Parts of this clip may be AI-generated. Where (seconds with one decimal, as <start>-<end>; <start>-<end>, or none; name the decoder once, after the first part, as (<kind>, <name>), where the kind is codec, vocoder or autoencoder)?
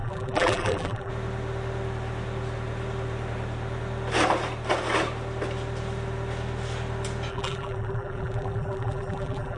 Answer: 0.0-1.1 (vocoder, BigVGAN v2); 7.3-9.6